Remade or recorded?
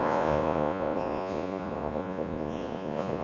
remade